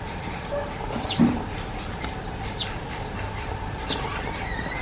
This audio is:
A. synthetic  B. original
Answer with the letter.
A